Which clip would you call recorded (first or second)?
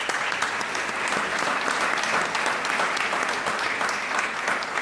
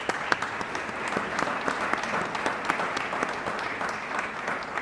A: second